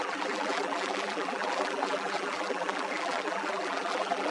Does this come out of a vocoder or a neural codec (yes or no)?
yes